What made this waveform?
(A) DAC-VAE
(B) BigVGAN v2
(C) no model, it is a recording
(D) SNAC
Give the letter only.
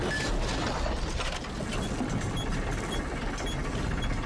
C